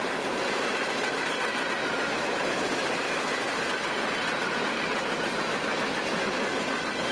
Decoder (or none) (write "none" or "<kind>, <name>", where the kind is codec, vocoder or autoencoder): none